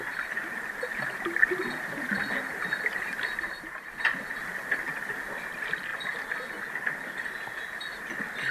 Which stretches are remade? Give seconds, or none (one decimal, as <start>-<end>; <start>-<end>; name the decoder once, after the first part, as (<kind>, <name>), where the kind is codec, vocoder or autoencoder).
none